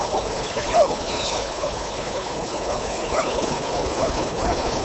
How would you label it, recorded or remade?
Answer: remade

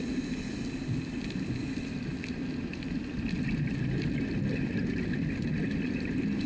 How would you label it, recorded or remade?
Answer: recorded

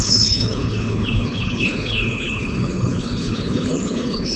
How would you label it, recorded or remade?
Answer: remade